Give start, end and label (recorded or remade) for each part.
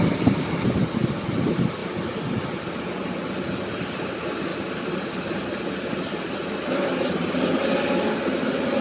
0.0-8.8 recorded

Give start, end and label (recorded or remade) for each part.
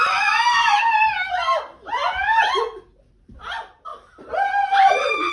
0.0-5.3 recorded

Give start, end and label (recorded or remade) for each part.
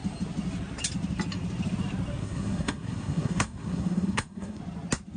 0.0-2.2 recorded; 2.2-4.6 remade; 4.6-5.2 recorded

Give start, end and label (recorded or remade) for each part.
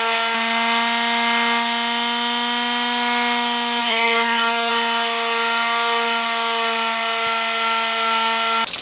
0.0-3.8 recorded; 3.8-4.7 remade; 4.7-8.8 recorded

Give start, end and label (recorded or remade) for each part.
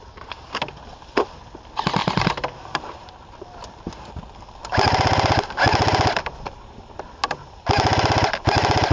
0.0-8.9 recorded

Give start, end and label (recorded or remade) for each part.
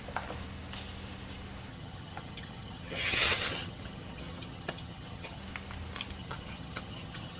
0.0-1.7 recorded; 1.7-5.4 remade; 5.4-6.2 recorded; 6.2-7.4 remade